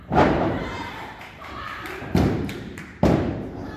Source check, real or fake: fake